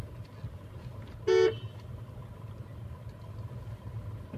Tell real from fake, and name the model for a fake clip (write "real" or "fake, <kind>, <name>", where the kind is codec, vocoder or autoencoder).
real